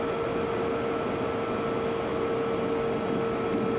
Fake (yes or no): no